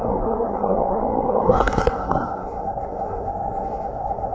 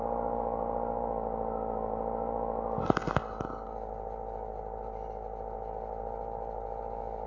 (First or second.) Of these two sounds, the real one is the second